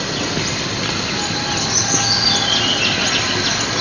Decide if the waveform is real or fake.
real